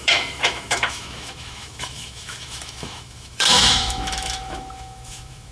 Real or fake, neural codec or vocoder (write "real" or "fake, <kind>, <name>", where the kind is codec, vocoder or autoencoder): fake, autoencoder, DAC-VAE